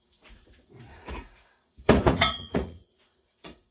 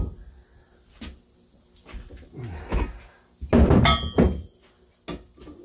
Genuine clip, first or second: second